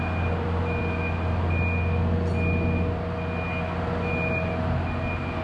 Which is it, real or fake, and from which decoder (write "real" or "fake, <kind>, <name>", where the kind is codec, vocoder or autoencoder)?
real